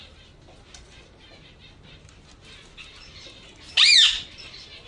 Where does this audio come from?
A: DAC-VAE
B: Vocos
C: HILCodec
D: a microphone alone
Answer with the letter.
D